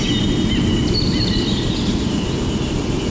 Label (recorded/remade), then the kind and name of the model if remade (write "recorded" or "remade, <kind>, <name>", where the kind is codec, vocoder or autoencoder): recorded